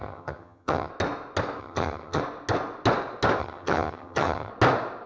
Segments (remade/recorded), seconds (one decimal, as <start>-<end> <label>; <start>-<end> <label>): 0.0-0.9 remade; 0.9-1.6 recorded; 1.6-2.2 remade; 2.2-3.4 recorded; 3.4-4.5 remade; 4.5-5.1 recorded